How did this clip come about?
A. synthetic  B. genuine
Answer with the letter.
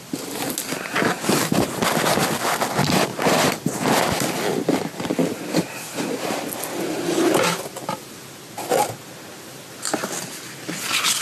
B